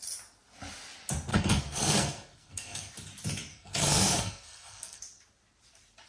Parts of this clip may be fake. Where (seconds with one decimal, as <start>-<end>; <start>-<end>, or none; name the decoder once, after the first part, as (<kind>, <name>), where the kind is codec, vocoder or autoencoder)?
1.3-2.9 (codec, SNAC); 3.5-5.0